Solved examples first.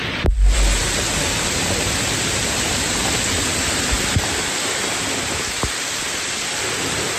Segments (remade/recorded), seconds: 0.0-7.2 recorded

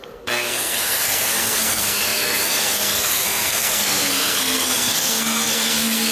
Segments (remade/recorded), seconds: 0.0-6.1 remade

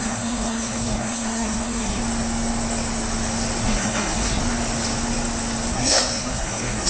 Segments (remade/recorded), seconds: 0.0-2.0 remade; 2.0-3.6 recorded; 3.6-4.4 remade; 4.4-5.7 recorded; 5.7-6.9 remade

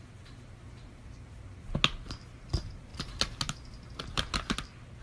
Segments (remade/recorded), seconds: 0.0-5.0 recorded

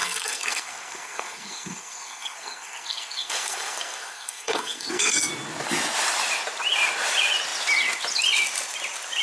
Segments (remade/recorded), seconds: 0.0-5.3 remade; 5.3-9.2 recorded